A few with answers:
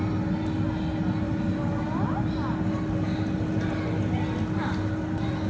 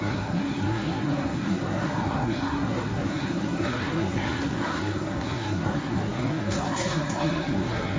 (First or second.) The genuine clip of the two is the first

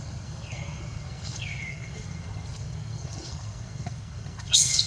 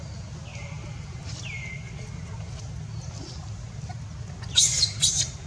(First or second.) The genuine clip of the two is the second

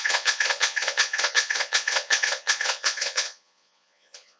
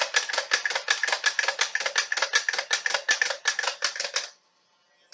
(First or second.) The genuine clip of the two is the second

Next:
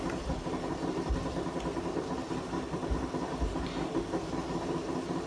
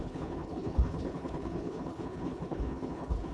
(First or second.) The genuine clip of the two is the first